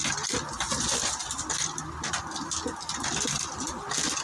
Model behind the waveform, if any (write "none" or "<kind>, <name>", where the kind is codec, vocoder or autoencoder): none